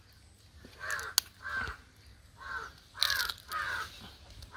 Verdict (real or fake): real